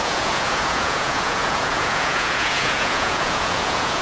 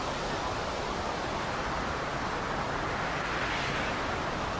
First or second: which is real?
second